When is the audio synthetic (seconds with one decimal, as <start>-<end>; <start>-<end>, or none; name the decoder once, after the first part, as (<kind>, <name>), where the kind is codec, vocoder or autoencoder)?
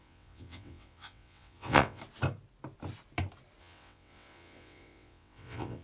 0.0-2.0 (vocoder, WaveNeXt); 3.6-5.8